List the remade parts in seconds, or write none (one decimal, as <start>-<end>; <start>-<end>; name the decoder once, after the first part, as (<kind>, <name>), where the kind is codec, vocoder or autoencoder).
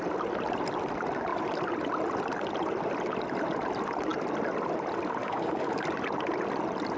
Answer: 5.2-5.8 (codec, DAC)